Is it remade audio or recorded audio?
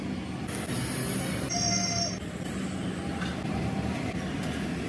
recorded